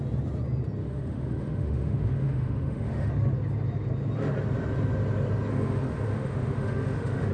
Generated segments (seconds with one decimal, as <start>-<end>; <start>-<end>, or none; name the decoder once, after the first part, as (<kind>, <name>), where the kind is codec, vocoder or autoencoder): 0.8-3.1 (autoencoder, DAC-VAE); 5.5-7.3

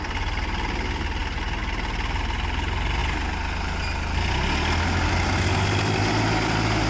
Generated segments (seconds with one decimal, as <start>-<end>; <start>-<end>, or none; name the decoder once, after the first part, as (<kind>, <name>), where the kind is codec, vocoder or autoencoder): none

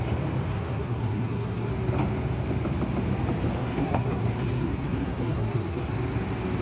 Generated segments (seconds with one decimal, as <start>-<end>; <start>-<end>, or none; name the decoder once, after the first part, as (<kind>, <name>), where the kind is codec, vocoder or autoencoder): 0.5-1.7 (codec, SNAC); 3.6-5.9

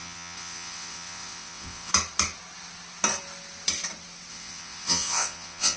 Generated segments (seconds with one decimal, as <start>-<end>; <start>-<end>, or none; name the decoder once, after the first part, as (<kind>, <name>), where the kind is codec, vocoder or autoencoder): 0.0-1.9 (vocoder, WaveNeXt); 4.3-5.8

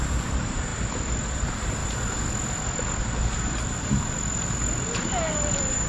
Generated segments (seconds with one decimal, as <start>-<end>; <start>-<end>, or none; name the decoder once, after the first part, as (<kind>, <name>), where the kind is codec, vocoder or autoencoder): 0.0-0.7 (vocoder, BigVGAN v2); 1.3-1.8; 5.3-5.9

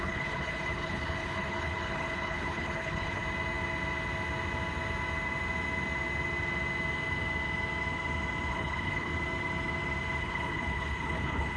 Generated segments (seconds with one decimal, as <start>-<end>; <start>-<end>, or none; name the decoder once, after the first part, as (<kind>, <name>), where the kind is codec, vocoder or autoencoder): 0.0-3.2 (codec, HILCodec); 8.5-9.1; 10.2-11.6

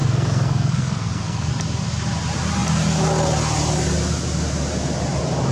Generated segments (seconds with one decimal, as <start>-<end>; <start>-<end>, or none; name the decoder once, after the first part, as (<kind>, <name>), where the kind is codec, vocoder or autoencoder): 0.0-1.5 (codec, SNAC)